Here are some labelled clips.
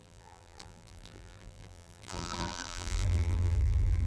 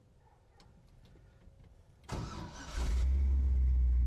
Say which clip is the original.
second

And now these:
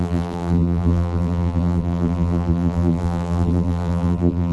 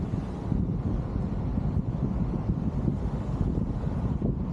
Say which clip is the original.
second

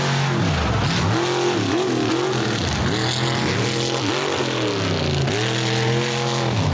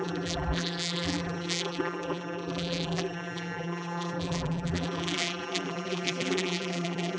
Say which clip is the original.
first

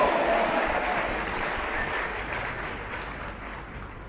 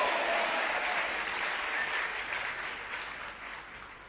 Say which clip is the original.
second